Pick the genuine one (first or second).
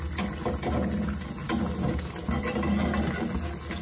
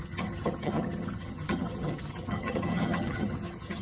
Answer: first